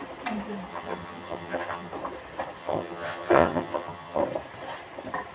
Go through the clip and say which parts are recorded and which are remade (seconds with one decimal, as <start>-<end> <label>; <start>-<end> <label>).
0.0-0.7 recorded; 0.7-1.9 remade; 1.9-2.6 recorded; 2.6-4.2 remade; 4.2-5.3 recorded

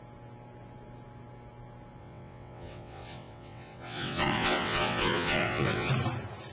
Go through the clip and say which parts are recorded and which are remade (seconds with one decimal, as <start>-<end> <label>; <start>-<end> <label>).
0.0-2.0 recorded; 2.0-5.9 remade; 5.9-6.5 recorded

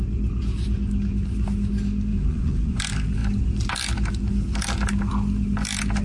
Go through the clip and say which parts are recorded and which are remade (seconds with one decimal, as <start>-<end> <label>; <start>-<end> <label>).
0.0-2.1 recorded; 2.1-2.8 remade; 2.8-6.0 recorded

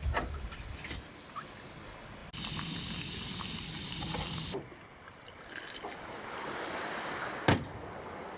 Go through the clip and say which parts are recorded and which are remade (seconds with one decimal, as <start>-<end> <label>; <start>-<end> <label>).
0.0-8.4 recorded

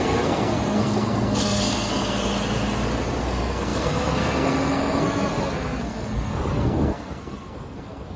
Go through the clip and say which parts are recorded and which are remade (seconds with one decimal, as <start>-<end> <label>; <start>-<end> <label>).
0.0-2.3 remade; 2.3-3.2 recorded; 3.2-8.2 remade